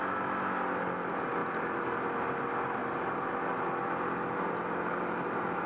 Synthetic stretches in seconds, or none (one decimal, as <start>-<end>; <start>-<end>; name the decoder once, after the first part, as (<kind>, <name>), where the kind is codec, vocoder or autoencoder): 2.8-3.3 (vocoder, BigVGAN v2)